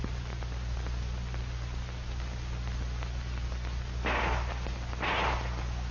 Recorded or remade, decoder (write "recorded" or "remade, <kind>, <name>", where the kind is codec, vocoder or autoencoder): recorded